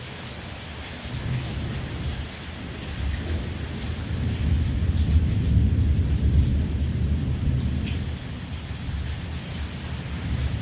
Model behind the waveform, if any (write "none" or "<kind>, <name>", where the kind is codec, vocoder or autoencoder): none